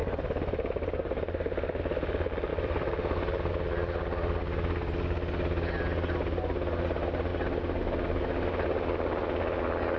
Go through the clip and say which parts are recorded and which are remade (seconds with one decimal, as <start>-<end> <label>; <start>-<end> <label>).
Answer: 0.0-2.5 recorded; 2.5-3.5 remade; 3.5-10.0 recorded